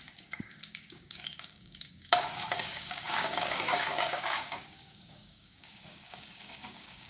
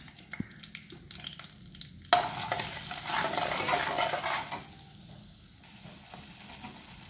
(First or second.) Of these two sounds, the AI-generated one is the first